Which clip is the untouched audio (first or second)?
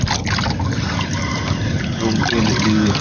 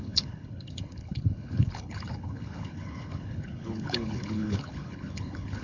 first